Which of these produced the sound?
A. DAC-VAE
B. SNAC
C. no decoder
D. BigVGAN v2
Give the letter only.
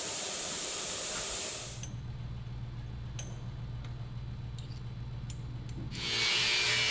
C